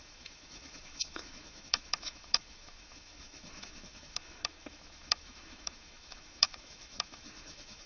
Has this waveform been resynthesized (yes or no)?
yes